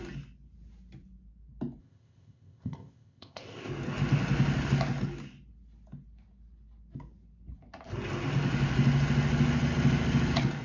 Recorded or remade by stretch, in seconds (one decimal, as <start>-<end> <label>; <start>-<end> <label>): 0.0-1.8 recorded; 1.8-3.7 remade; 3.7-10.6 recorded

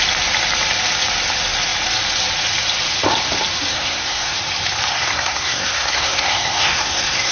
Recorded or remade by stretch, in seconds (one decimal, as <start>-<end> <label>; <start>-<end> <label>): 0.0-3.7 recorded; 3.7-4.4 remade; 4.4-4.9 recorded; 4.9-7.3 remade